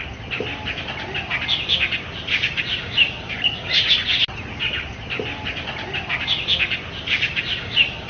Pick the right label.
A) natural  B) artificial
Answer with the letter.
A